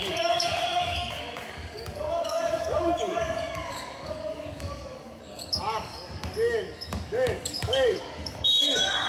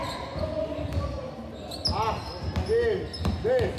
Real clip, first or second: second